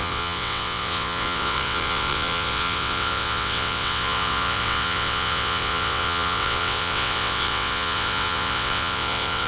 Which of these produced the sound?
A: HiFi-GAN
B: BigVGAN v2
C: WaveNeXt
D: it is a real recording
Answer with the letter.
C